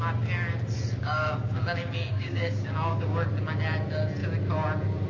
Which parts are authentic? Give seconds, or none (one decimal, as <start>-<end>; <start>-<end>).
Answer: 0.0-1.0; 3.3-5.1